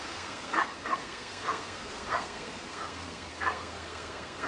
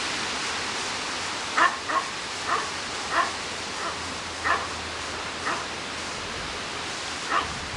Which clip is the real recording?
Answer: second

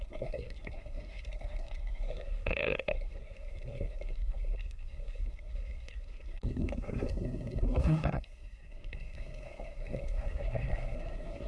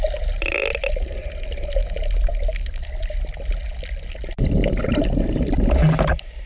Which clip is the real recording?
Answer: second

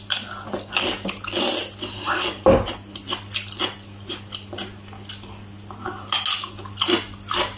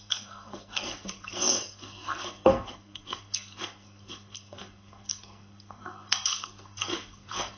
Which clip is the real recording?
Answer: first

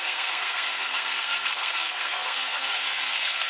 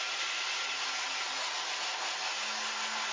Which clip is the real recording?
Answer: second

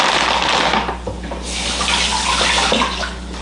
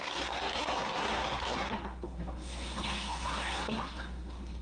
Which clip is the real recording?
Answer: first